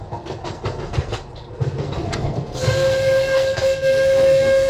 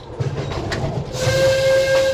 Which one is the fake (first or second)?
first